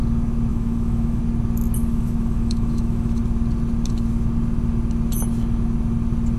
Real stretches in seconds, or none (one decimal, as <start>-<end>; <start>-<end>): 0.0-0.5; 1.2-1.8; 3.2-6.4